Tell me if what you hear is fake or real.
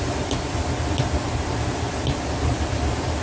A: real